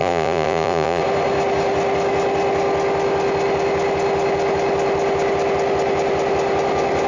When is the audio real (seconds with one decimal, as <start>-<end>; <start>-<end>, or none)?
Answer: 1.0-7.1